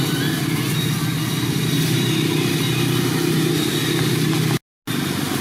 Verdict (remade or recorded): recorded